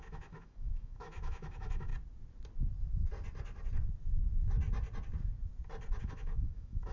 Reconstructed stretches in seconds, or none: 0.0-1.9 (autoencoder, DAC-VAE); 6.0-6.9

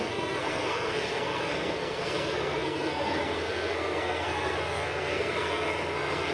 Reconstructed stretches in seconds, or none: 0.0-6.3 (codec, SNAC)